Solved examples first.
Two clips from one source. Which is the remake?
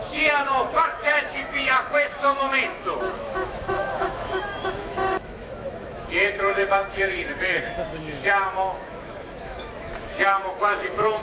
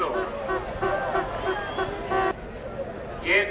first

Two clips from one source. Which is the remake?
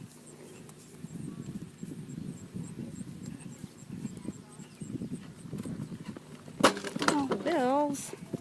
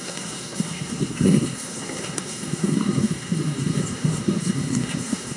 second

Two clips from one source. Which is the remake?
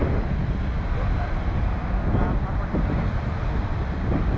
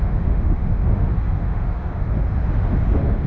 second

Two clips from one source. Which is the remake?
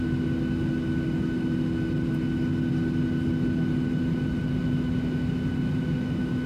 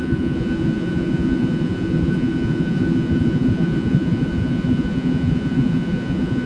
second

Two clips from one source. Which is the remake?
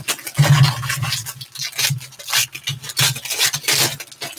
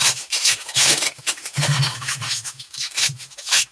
second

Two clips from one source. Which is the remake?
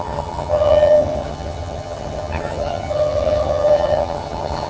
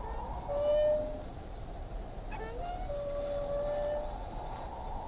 first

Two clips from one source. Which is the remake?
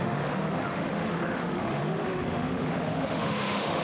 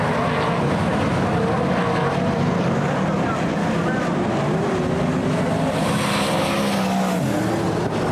first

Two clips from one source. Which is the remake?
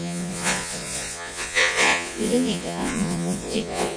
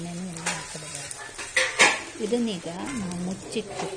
first